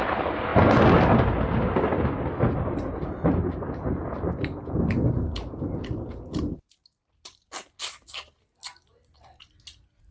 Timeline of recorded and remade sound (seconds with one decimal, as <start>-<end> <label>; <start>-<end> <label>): 0.0-10.1 recorded